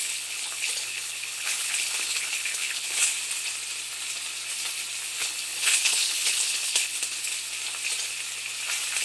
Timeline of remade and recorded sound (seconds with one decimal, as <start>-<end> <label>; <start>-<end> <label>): 0.0-3.0 remade; 3.0-5.2 recorded; 5.2-7.0 remade; 7.0-9.0 recorded

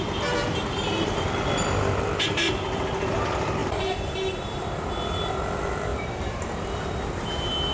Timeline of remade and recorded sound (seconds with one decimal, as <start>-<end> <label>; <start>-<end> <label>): 0.0-3.6 recorded; 3.6-4.9 remade; 4.9-5.9 recorded; 5.9-6.5 remade; 6.5-7.7 recorded

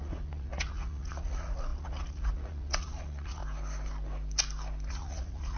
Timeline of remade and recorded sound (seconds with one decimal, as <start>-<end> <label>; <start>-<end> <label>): 0.0-3.4 remade; 3.4-4.9 recorded; 4.9-5.6 remade

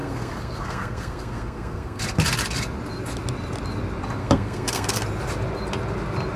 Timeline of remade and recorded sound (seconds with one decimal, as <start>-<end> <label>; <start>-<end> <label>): 0.0-2.0 remade; 2.0-4.2 recorded; 4.2-5.0 remade; 5.0-6.4 recorded

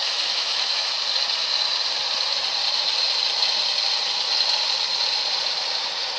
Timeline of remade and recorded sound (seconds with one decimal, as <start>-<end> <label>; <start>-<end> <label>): 0.0-0.9 remade; 0.9-6.2 recorded

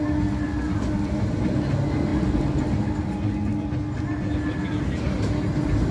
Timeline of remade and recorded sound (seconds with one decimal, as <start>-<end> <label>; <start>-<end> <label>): 0.0-5.9 recorded